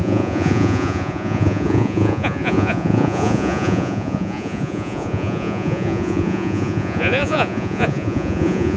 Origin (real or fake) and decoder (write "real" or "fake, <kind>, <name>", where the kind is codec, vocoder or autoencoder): fake, vocoder, Vocos